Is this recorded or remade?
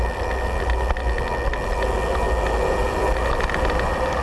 recorded